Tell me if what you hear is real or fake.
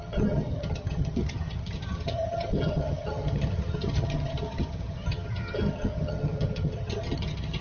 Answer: fake